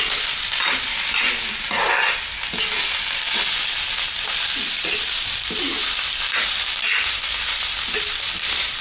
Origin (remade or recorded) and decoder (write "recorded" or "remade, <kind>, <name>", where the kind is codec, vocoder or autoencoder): recorded